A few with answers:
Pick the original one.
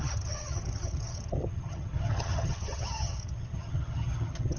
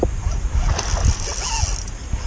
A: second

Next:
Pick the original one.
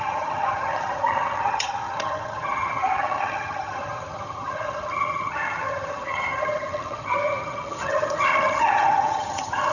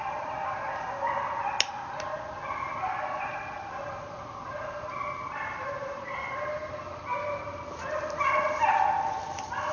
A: second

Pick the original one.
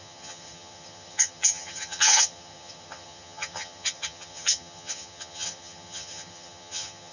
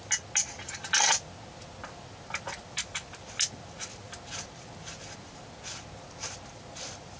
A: second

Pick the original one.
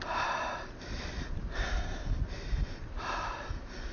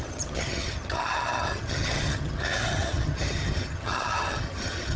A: first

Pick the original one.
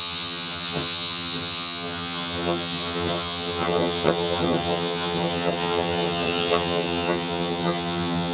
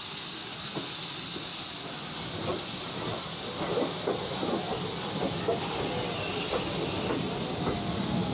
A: second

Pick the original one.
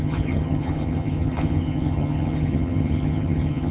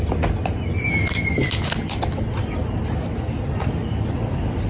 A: second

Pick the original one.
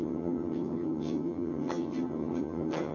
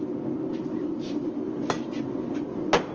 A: second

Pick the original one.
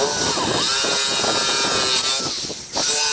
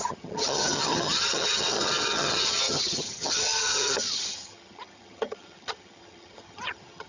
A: first